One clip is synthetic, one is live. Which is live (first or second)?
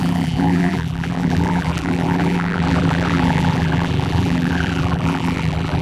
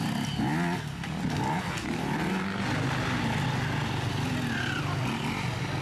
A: second